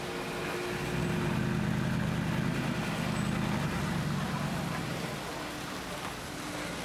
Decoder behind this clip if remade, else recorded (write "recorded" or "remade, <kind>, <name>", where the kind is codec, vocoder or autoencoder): recorded